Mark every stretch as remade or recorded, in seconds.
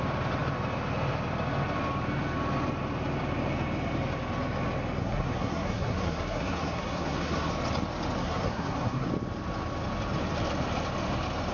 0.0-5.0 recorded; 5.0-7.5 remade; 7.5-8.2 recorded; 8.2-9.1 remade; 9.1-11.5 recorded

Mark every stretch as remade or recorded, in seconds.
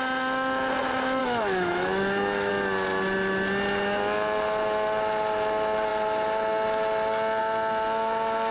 0.0-1.2 recorded; 1.2-2.5 remade; 2.5-8.5 recorded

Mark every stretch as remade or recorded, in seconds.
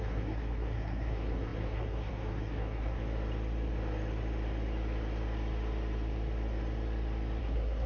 0.0-3.0 remade; 3.0-7.4 recorded; 7.4-7.9 remade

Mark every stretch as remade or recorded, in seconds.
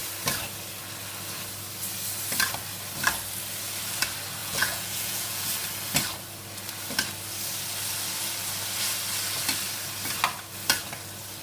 0.0-4.4 recorded; 4.4-5.5 remade; 5.5-11.4 recorded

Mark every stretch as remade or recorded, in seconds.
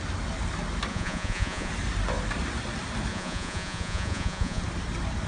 0.0-0.9 recorded; 0.9-1.7 remade; 1.7-3.1 recorded; 3.1-4.6 remade; 4.6-5.3 recorded